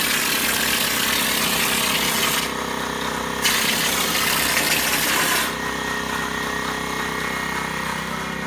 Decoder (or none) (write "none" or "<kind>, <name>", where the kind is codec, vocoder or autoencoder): none